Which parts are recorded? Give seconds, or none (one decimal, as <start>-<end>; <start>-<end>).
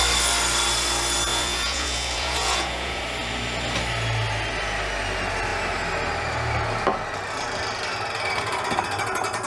0.0-1.3; 3.0-9.5